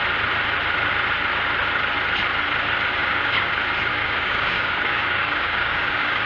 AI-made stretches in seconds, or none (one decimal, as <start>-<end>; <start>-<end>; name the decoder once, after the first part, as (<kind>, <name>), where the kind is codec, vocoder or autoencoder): 3.0-3.5 (codec, DAC); 3.9-6.3